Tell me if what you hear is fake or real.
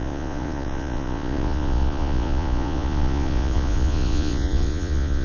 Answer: fake